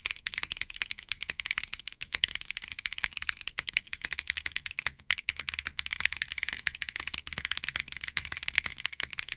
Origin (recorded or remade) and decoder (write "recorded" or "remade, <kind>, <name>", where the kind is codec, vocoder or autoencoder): remade, codec, SNAC